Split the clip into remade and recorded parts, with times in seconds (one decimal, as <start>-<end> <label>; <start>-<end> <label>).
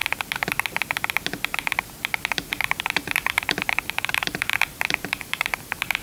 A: 0.0-2.3 recorded; 2.3-6.0 remade